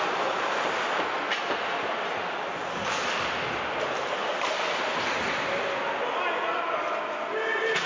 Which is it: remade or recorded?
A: recorded